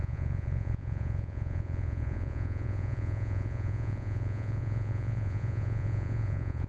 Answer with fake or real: fake